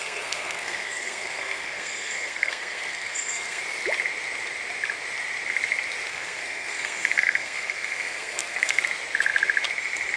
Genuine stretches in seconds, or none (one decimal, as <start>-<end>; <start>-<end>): 3.6-6.1; 8.8-10.2